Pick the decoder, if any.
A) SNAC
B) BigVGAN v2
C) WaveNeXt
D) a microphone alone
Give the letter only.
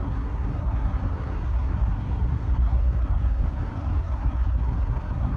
A